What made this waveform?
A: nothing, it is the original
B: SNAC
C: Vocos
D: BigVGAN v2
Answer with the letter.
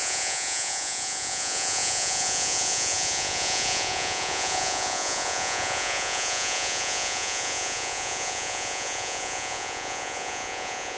C